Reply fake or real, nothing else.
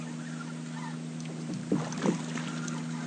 real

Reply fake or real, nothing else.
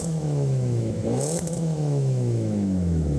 fake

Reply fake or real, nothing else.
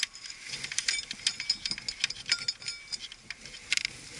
real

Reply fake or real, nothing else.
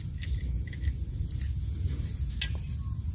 real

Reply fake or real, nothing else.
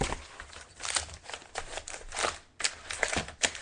real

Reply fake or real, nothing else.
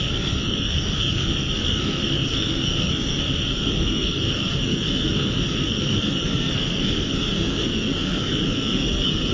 fake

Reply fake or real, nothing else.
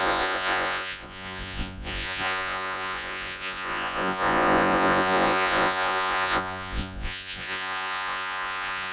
fake